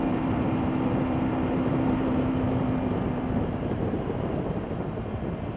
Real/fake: fake